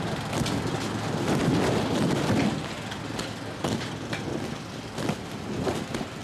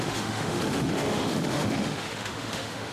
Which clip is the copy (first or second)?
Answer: second